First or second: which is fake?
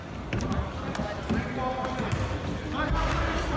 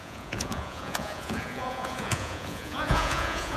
second